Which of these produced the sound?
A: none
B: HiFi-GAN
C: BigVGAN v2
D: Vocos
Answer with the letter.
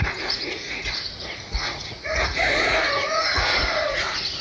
D